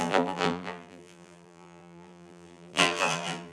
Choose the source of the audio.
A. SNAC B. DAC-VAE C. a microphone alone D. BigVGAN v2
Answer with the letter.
D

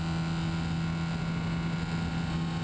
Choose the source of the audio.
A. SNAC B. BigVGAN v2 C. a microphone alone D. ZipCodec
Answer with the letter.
C